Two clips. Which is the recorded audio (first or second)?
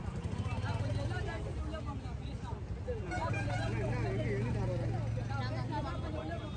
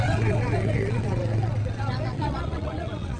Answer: first